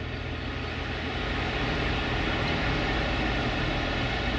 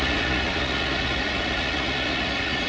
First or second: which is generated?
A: second